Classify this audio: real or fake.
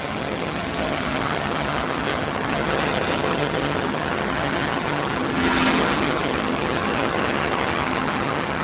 fake